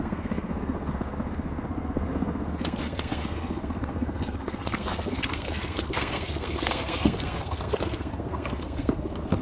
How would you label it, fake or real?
fake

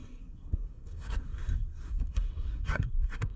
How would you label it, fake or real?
fake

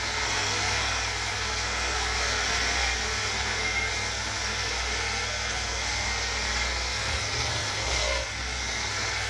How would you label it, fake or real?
fake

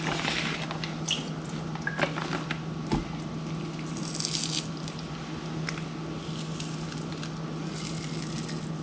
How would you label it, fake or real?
real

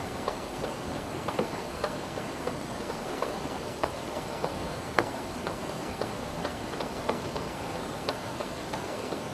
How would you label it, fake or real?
fake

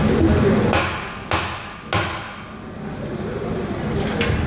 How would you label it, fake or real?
real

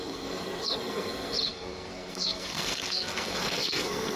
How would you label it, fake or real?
fake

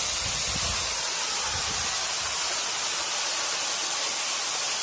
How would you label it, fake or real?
real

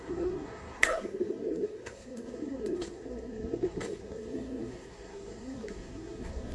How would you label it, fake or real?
fake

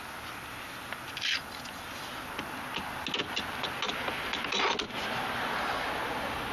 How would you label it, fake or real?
real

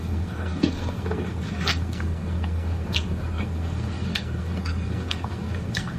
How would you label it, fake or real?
fake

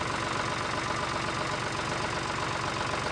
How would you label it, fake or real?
real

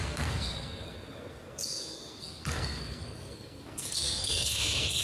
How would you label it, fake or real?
fake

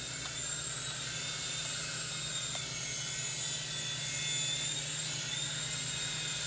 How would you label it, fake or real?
real